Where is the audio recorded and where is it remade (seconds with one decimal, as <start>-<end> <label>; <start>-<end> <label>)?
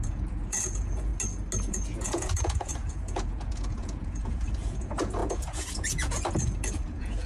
0.0-1.1 remade; 1.1-1.7 recorded; 1.7-7.3 remade